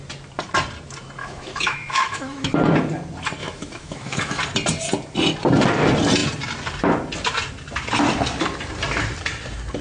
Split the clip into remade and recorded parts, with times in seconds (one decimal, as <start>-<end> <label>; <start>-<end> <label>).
0.0-1.2 recorded; 1.2-2.5 remade; 2.5-3.4 recorded; 3.4-4.4 remade; 4.4-9.8 recorded